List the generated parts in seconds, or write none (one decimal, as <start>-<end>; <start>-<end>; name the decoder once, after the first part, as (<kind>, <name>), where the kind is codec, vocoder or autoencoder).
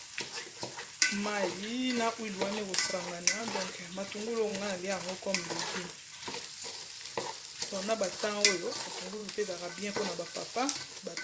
none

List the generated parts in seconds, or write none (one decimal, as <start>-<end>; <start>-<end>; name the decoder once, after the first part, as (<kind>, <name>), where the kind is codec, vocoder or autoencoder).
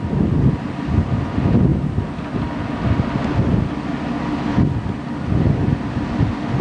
none